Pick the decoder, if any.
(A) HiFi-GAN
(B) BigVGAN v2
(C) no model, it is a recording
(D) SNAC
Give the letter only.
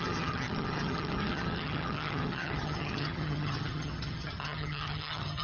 A